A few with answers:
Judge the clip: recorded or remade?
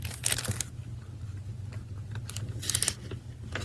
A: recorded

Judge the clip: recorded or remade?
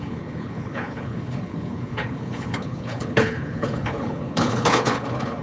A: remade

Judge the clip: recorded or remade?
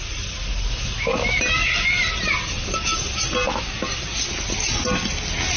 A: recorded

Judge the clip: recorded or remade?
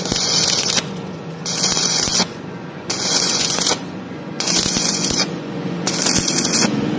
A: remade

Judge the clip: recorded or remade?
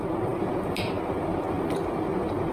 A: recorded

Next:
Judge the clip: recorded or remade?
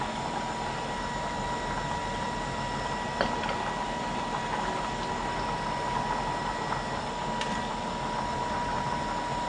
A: recorded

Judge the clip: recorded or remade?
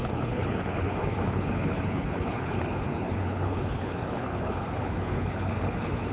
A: remade